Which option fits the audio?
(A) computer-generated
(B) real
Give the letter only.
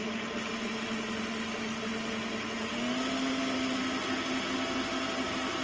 B